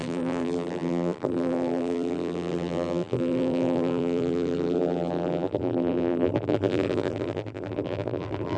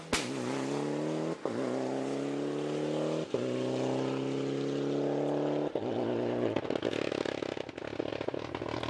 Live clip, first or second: second